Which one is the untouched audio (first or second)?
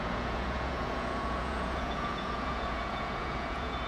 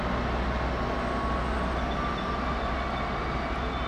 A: second